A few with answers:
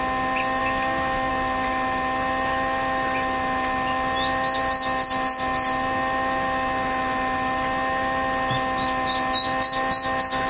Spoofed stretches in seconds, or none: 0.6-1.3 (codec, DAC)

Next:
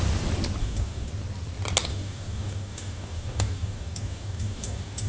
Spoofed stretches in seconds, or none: 0.6-1.1 (codec, DAC); 1.9-5.1